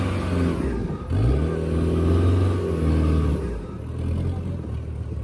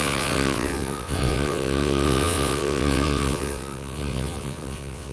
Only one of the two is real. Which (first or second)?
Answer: first